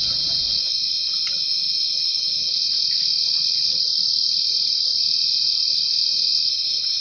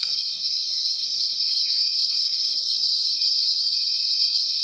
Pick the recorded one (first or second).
first